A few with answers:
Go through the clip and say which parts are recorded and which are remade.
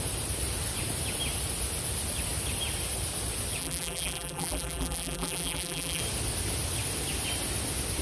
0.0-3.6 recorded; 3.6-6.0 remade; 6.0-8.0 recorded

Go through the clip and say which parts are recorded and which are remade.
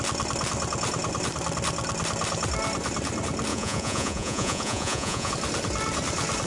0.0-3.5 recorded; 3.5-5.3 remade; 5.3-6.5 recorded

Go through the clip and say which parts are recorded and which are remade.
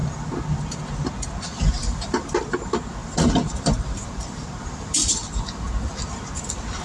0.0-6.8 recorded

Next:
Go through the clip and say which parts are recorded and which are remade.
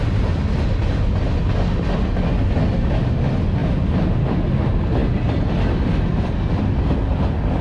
0.0-7.6 recorded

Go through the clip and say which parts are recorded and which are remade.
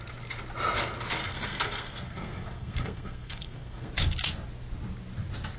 0.0-1.2 recorded; 1.2-3.9 remade; 3.9-5.6 recorded